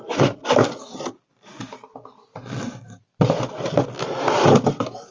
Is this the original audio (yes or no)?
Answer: yes